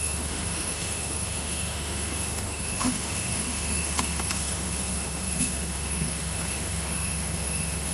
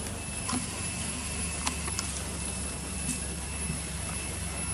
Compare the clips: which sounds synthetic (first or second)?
first